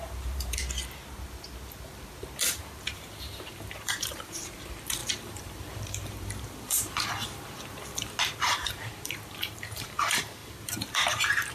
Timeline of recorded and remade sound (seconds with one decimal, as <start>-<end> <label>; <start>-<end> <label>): 0.0-0.6 remade; 0.6-2.5 recorded; 2.5-11.5 remade